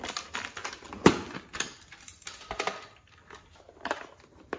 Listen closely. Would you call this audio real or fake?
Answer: real